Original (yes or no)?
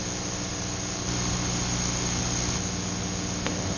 yes